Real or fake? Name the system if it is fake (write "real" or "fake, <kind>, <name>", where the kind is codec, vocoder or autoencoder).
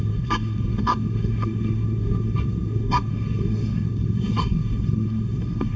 fake, codec, SNAC